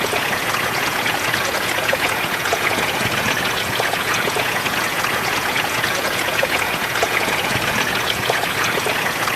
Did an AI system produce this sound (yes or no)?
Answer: yes